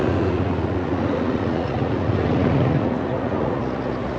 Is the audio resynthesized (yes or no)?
yes